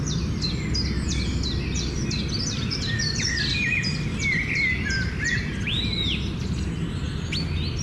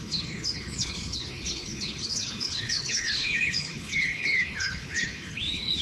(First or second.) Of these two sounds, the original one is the first